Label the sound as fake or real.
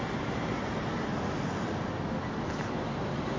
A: real